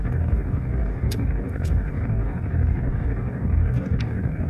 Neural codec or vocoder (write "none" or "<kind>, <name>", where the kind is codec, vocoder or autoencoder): codec, DAC